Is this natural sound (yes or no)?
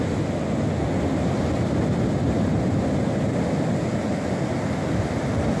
yes